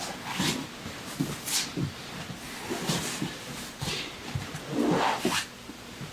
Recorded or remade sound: recorded